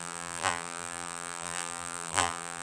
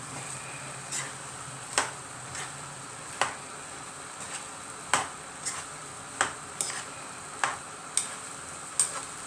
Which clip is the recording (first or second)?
second